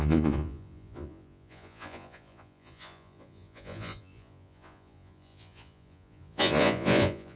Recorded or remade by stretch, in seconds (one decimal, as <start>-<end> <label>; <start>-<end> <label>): 0.0-7.4 remade

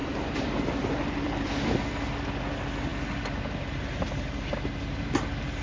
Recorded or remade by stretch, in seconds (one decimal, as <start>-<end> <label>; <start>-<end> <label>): 0.0-1.7 remade; 1.7-5.6 recorded

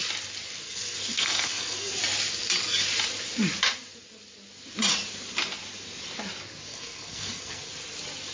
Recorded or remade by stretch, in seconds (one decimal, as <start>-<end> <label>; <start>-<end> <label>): 0.0-0.6 recorded; 0.6-1.9 remade; 1.9-6.7 recorded; 6.7-7.6 remade; 7.6-8.3 recorded

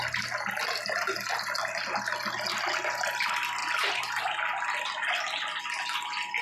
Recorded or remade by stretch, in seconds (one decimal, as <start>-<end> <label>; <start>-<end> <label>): 0.0-6.4 recorded